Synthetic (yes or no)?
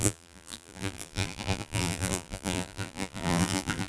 yes